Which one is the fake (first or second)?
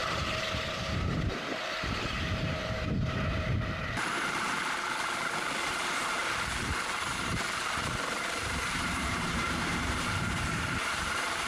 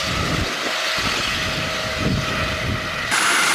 first